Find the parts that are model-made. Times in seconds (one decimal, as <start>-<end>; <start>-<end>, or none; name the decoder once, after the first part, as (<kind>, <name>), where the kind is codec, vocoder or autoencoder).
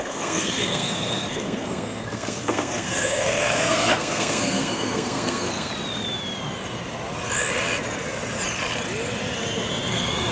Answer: 0.0-5.7 (codec, SNAC); 9.9-10.3